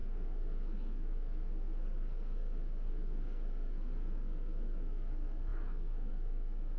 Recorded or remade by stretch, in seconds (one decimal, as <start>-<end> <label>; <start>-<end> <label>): 0.0-6.8 remade